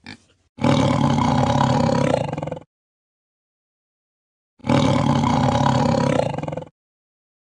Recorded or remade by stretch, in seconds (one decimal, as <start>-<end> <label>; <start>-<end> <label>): 0.0-7.5 recorded